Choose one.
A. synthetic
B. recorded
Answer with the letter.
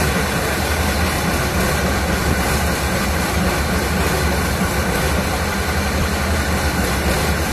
B